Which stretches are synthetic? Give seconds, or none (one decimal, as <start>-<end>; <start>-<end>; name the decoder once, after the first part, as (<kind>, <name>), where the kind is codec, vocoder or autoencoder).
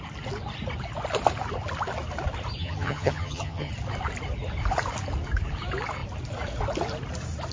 2.6-3.7 (vocoder, HiFi-GAN)